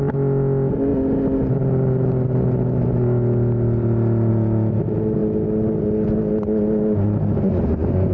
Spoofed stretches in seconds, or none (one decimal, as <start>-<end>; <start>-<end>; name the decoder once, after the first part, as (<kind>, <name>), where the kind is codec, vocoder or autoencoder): none